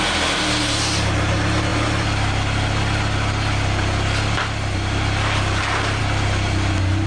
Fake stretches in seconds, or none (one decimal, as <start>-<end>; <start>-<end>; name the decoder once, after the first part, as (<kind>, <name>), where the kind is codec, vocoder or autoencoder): none